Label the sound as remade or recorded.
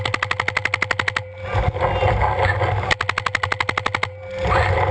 recorded